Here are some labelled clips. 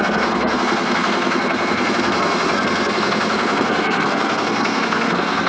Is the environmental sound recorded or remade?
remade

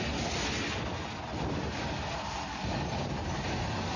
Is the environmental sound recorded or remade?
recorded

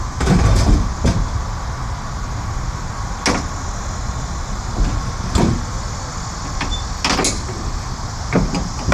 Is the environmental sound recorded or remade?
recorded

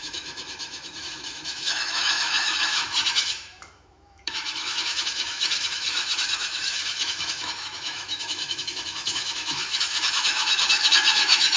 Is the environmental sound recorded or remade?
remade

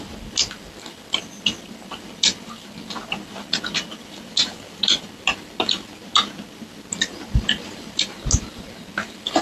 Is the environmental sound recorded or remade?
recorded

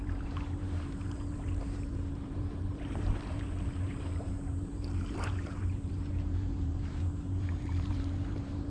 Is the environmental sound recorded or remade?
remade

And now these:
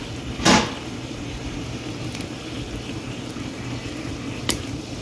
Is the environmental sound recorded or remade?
recorded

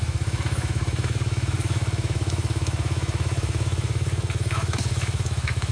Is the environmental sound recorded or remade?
remade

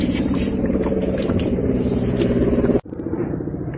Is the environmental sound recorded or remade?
remade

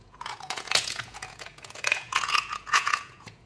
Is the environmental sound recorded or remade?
remade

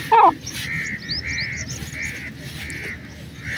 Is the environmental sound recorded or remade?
recorded